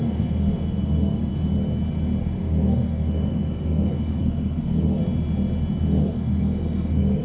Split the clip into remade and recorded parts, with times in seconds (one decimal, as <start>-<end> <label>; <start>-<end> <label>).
0.0-1.3 remade; 1.3-2.2 recorded; 2.2-5.0 remade; 5.0-6.0 recorded; 6.0-7.2 remade